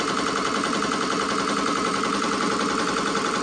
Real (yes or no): yes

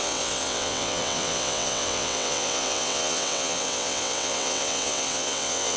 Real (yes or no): no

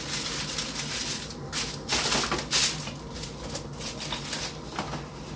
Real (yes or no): yes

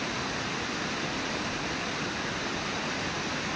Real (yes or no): yes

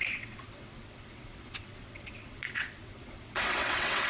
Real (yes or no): no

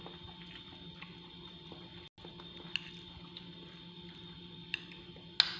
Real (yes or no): yes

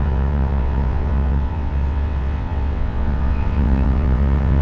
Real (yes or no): no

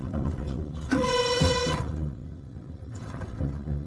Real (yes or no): no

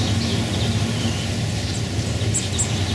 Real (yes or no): yes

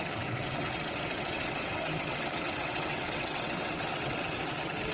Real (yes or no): no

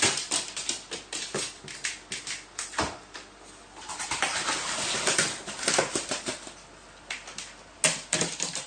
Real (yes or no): yes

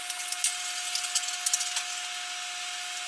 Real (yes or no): yes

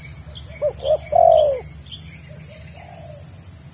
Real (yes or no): yes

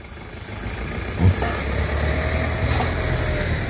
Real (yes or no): yes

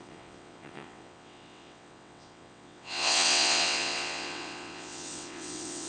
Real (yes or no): no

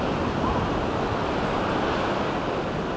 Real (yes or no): yes